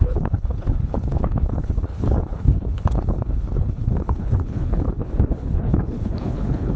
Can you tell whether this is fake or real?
fake